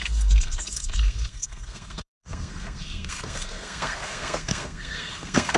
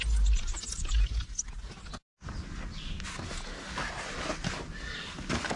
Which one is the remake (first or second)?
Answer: first